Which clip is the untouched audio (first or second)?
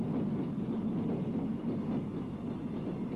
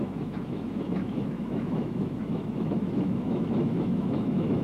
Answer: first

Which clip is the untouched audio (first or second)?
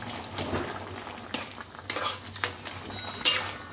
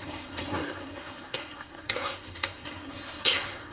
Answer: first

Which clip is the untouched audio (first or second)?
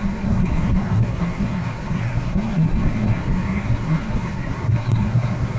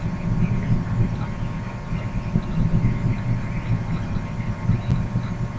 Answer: second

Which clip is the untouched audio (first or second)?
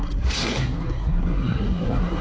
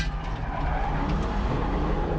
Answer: second